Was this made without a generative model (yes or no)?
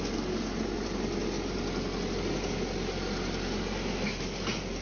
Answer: yes